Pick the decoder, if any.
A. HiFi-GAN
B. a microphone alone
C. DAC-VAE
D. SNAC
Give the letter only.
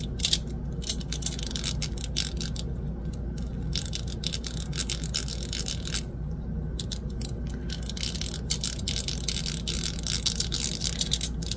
B